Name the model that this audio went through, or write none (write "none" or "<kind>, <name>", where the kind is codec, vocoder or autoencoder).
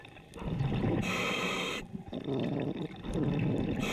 none